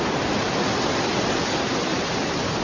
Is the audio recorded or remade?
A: recorded